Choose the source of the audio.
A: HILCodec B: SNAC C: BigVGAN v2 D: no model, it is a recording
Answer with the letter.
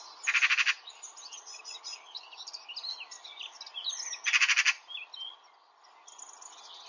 D